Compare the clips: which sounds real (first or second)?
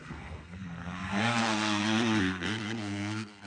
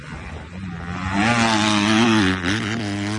second